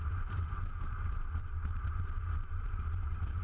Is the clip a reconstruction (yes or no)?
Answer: yes